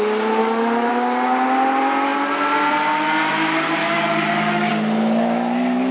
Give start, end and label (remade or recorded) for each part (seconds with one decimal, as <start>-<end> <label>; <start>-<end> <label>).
0.0-0.4 recorded; 0.4-0.9 remade; 0.9-3.8 recorded; 3.8-4.7 remade; 4.7-5.9 recorded